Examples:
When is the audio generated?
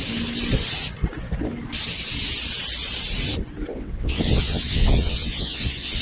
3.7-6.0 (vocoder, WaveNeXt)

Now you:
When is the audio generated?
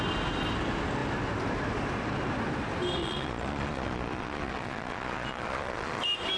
3.0-6.0 (vocoder, Vocos)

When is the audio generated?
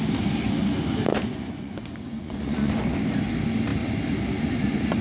1.1-2.7 (vocoder, Vocos)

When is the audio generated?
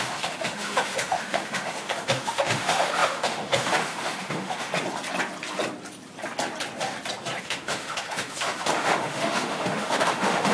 0.0-4.7 (autoencoder, DAC-VAE); 7.4-10.5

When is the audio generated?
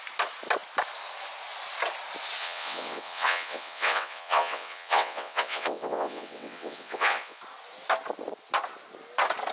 2.4-7.4 (vocoder, WaveNeXt)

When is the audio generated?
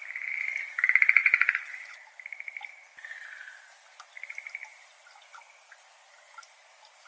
1.2-1.8 (vocoder, Vocos)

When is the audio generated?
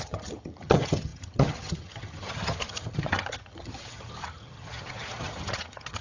0.0-6.0 (vocoder, HiFi-GAN)